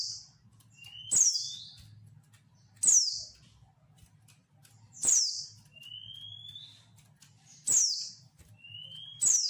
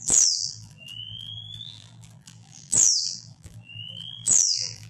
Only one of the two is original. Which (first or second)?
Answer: first